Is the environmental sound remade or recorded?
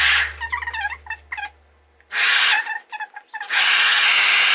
recorded